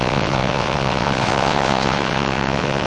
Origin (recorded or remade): remade